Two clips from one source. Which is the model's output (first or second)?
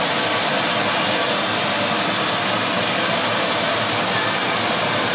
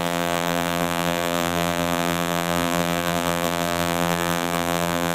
second